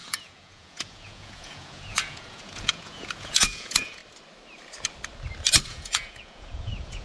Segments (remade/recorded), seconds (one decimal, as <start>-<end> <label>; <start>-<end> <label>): 0.0-4.0 remade; 4.0-5.7 recorded; 5.7-7.0 remade